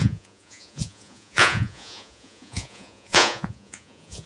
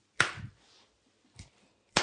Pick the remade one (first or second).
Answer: first